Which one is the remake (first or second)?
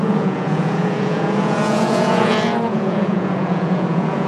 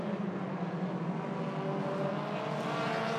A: first